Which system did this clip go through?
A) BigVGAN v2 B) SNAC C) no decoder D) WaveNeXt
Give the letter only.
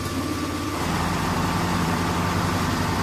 A